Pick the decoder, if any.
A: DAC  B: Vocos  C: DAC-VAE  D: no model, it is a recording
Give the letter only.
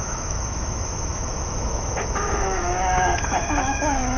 C